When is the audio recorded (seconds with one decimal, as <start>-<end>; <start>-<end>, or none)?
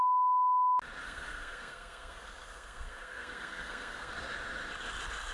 0.0-1.0; 4.1-5.3